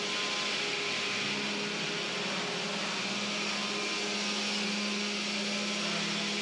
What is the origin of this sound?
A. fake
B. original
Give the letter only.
B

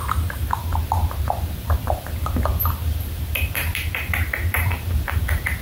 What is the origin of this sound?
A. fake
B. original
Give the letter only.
A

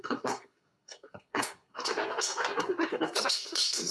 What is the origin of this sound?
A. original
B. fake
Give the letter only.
B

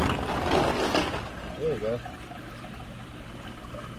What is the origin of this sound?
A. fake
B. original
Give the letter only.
B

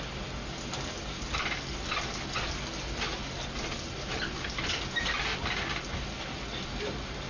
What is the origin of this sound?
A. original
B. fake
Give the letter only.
A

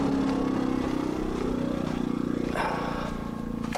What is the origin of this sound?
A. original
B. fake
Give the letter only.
A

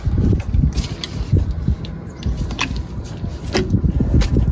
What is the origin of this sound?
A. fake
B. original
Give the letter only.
B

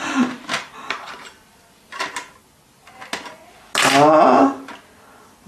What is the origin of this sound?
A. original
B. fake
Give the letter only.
A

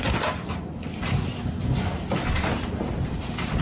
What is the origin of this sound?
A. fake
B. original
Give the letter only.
B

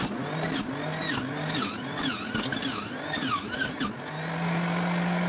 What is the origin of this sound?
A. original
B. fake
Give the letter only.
A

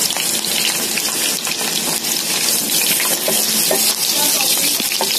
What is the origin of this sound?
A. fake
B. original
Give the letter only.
B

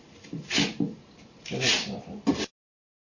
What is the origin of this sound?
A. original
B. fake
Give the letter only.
A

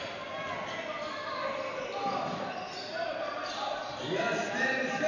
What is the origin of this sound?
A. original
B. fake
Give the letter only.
A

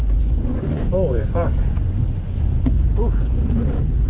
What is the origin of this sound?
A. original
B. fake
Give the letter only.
B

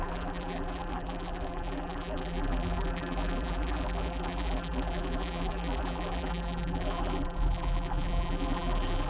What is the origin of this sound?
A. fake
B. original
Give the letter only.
A